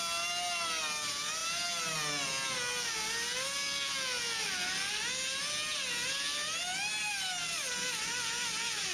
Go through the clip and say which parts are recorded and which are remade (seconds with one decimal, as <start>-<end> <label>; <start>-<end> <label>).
0.0-8.9 recorded